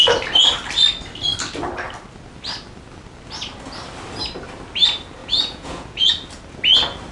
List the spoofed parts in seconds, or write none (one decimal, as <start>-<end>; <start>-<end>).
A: 5.2-6.1